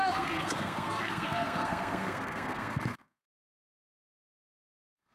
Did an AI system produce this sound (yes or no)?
yes